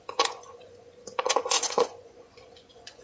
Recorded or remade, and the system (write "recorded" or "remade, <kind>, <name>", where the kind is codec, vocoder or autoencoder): remade, vocoder, Vocos